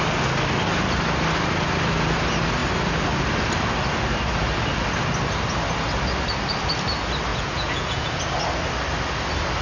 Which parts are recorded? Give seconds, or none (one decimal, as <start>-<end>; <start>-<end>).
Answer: 0.0-7.3; 8.2-9.6